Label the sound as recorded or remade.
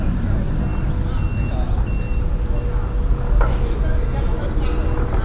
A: recorded